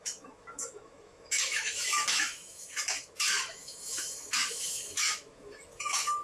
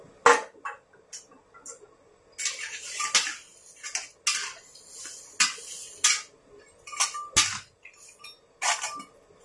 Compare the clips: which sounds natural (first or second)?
second